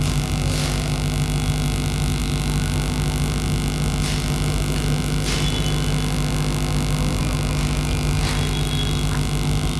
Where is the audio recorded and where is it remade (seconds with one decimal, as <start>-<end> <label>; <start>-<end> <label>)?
0.0-9.8 recorded